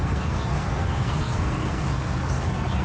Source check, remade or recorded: remade